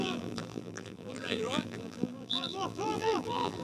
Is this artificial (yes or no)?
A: yes